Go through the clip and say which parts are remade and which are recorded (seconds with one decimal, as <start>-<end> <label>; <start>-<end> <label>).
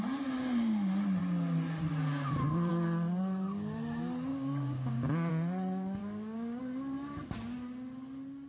0.0-4.3 recorded; 4.3-5.3 remade; 5.3-6.0 recorded; 6.0-6.6 remade; 6.6-8.5 recorded